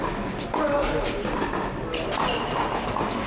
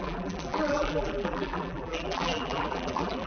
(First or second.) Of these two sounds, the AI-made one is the second